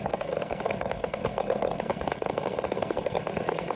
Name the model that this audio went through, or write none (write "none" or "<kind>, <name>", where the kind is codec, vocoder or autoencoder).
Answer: codec, SNAC